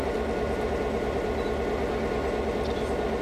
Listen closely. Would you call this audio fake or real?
real